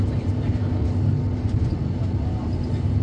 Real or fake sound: real